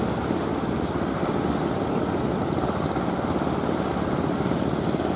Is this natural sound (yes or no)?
yes